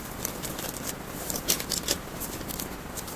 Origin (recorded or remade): remade